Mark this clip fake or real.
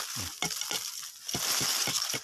real